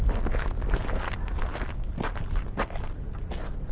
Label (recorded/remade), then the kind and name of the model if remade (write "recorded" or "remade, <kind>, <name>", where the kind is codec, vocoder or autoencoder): recorded